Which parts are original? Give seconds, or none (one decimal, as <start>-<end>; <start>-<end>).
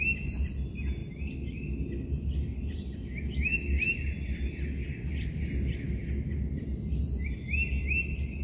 0.0-8.4